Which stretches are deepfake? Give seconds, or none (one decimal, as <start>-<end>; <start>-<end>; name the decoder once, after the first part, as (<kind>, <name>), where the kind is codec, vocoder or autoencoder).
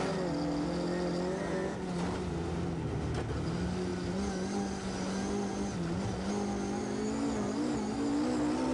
none